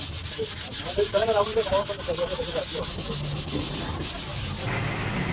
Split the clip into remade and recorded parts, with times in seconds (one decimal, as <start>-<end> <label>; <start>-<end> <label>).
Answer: 0.0-5.3 recorded

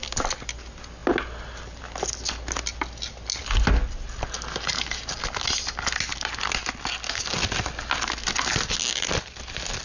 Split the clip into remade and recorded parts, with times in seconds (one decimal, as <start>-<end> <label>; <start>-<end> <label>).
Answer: 0.0-9.8 recorded

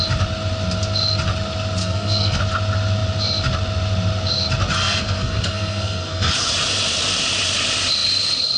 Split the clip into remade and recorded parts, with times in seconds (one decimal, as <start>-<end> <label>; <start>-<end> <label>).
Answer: 0.0-1.8 recorded; 1.8-2.4 remade; 2.4-4.8 recorded; 4.8-6.3 remade; 6.3-8.6 recorded

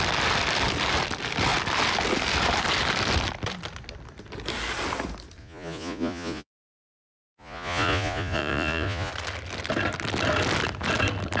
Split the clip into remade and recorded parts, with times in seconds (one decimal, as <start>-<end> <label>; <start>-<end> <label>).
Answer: 0.0-5.4 recorded; 5.4-9.1 remade; 9.1-11.4 recorded

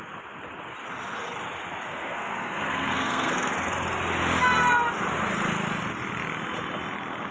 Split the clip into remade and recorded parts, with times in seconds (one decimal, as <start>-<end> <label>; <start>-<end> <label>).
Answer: 0.0-1.9 recorded; 1.9-3.5 remade; 3.5-7.3 recorded

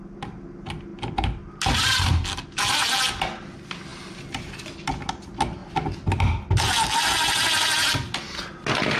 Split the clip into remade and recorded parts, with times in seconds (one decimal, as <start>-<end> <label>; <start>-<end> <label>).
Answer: 0.0-9.0 recorded